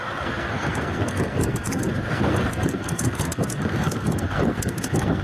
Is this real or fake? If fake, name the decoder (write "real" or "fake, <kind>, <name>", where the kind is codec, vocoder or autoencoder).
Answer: fake, codec, SNAC